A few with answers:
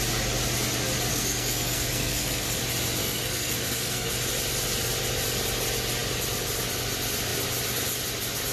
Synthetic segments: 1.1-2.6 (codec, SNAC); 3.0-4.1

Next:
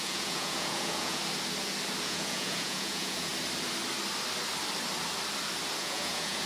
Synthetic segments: 0.0-1.2 (vocoder, Vocos); 2.0-3.3; 5.8-6.5

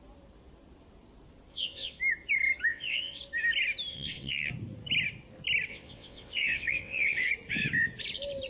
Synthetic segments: 1.5-2.0 (vocoder, WaveNeXt); 2.7-3.2; 3.9-4.5; 5.7-7.3